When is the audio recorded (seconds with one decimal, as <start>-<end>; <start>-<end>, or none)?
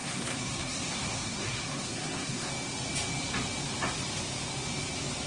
2.5-5.3